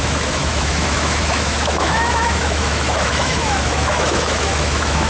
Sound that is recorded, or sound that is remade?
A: remade